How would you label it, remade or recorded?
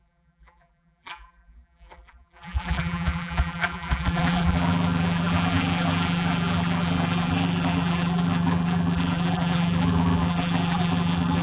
remade